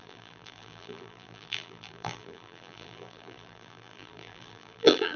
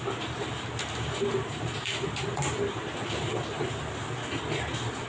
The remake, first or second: first